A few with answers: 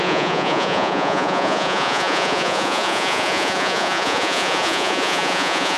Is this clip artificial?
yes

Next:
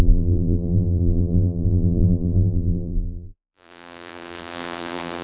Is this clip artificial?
yes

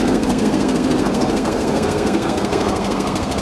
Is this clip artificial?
yes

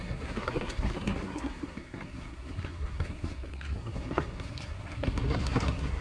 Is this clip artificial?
yes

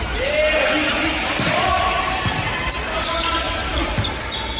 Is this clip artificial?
no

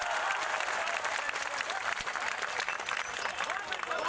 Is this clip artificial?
yes